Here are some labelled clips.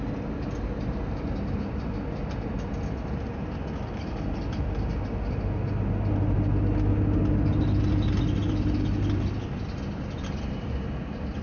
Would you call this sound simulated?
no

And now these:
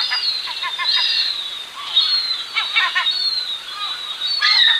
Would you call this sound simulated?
yes